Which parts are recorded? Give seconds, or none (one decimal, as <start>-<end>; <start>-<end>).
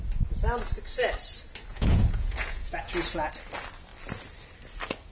0.0-1.7; 3.3-5.1